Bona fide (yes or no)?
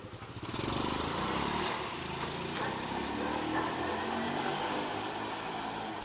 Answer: yes